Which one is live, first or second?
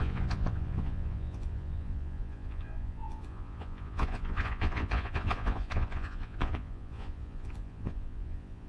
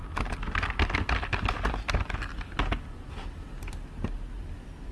second